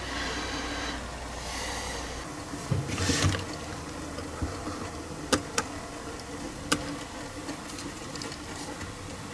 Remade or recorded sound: recorded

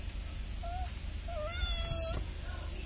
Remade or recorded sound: recorded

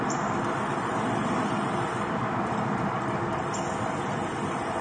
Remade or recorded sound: recorded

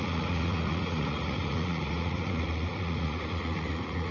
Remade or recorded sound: remade